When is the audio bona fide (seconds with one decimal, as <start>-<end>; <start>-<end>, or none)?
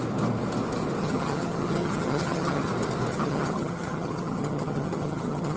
0.0-1.0; 2.7-3.1